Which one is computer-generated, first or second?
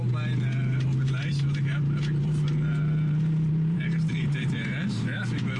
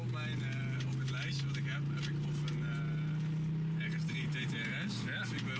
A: first